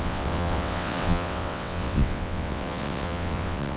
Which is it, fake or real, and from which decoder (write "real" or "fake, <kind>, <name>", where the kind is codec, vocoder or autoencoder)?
fake, vocoder, WaveNeXt